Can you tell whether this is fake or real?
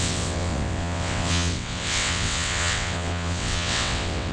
fake